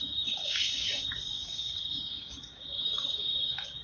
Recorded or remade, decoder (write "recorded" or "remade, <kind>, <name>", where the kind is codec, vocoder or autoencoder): remade, codec, DAC